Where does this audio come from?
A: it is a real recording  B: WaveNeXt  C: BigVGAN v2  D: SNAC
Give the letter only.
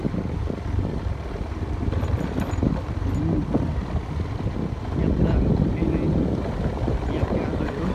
A